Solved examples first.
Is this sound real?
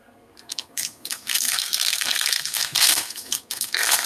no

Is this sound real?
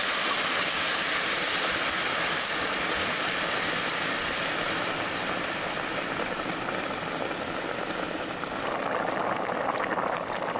yes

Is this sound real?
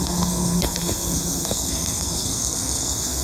no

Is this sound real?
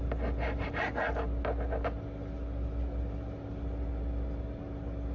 yes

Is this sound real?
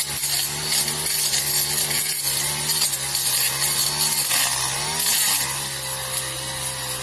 yes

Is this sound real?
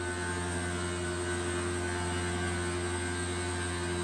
yes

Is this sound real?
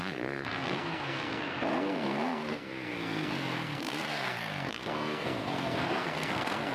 no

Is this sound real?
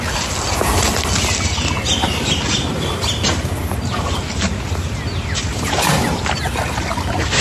yes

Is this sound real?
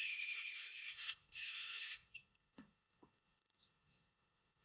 no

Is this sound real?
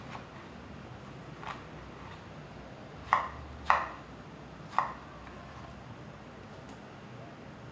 yes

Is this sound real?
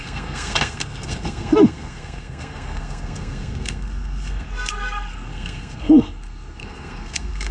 no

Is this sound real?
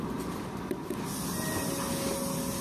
yes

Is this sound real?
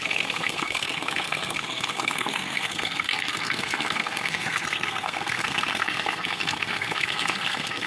no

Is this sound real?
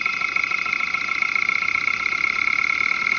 yes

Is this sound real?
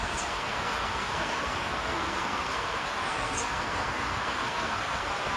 no